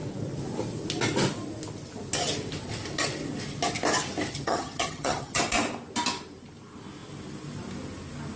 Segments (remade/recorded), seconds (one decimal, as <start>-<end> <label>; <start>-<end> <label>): 0.0-4.3 recorded; 4.3-5.4 remade; 5.4-8.4 recorded